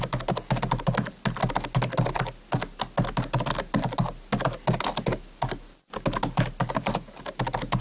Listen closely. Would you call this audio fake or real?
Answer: real